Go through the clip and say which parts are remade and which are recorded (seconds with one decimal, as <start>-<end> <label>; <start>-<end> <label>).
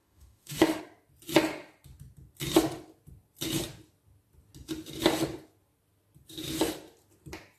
0.0-0.8 remade; 0.8-7.6 recorded